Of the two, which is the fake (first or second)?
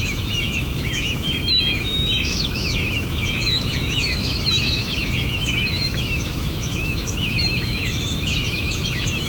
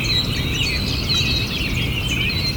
first